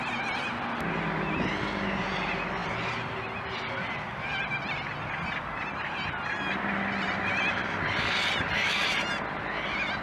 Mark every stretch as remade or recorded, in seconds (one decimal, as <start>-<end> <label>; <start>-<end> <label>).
0.0-10.0 recorded